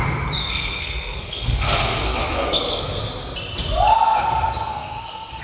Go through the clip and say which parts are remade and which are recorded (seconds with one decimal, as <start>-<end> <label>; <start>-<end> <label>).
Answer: 0.0-0.4 recorded; 0.4-3.0 remade; 3.0-3.9 recorded; 3.9-5.4 remade